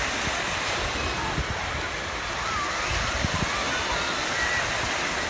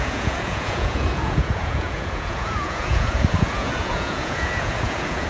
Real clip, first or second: first